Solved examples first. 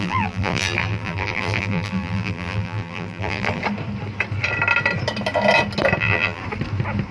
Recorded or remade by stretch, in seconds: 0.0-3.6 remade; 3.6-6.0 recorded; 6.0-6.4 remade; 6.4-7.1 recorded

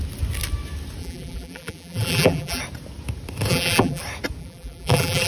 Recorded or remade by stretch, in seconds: 0.0-1.0 recorded; 1.0-2.6 remade; 2.6-3.5 recorded; 3.5-4.0 remade; 4.0-4.4 recorded; 4.4-5.3 remade